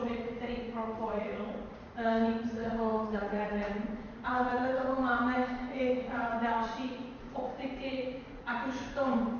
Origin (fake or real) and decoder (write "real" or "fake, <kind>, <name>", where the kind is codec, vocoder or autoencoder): fake, vocoder, Vocos